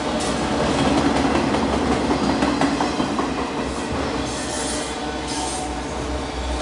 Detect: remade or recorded recorded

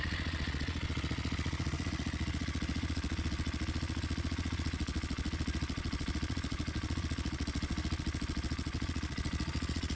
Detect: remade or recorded remade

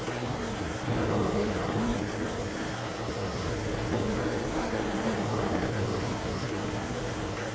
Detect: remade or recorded remade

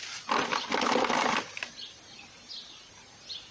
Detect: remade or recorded recorded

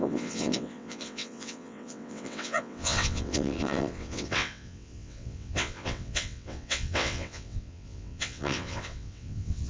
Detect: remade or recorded remade